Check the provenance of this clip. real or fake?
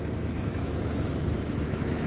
fake